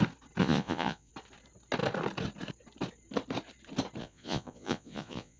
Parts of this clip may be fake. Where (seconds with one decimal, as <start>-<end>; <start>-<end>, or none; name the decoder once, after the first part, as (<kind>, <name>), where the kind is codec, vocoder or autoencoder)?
0.4-1.1 (vocoder, Vocos); 4.0-5.4